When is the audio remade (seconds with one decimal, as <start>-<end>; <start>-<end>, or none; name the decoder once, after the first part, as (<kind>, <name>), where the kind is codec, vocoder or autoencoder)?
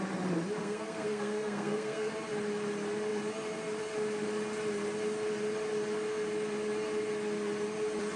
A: 0.6-2.1 (codec, SNAC)